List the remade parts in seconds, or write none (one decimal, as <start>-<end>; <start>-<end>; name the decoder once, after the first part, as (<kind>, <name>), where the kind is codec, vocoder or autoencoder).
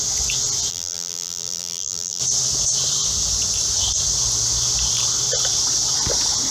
0.7-2.2 (vocoder, BigVGAN v2)